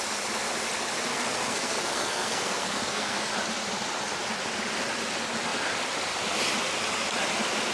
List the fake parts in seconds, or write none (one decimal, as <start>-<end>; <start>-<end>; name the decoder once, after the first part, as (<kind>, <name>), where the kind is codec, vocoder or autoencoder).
1.1-3.3 (codec, SNAC)